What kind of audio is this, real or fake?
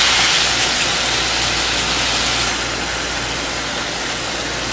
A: real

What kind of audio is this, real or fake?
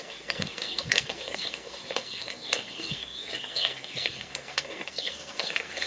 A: fake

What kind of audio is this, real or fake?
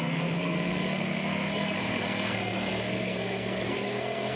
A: fake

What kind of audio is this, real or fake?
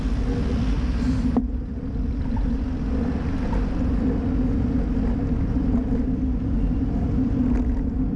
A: real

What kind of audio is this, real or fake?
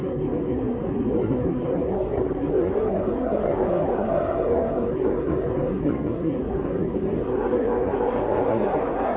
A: fake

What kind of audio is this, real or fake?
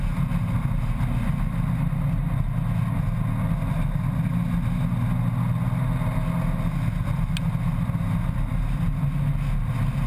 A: real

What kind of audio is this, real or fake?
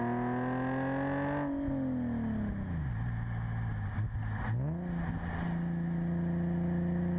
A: real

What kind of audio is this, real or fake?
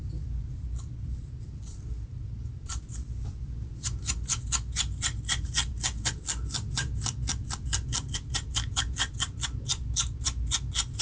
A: real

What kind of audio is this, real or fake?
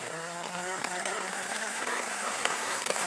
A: fake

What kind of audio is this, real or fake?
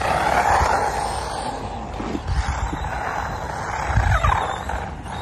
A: real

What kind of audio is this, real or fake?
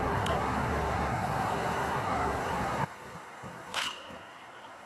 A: fake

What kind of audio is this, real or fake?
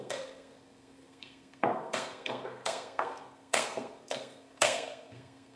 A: fake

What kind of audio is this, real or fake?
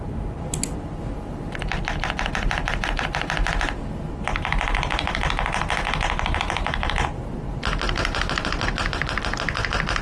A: real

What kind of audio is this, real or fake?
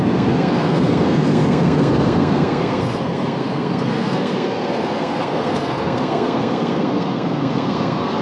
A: fake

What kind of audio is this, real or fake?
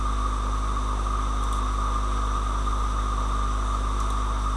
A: real